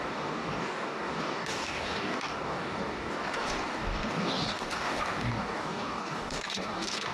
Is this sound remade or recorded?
remade